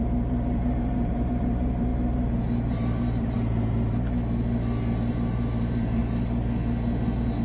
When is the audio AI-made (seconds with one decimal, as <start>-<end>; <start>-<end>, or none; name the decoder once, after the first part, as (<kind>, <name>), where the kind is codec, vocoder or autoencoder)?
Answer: 0.0-4.2 (vocoder, BigVGAN v2); 5.1-6.0

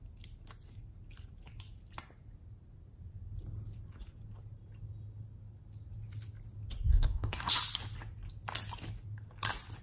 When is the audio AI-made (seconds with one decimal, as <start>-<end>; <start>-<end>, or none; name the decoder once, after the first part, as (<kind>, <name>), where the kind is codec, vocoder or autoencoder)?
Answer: 6.9-7.5 (codec, SNAC)